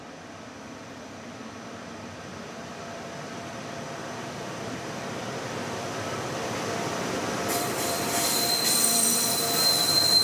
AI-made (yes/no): yes